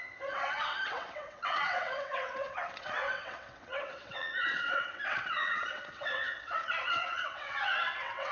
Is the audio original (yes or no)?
no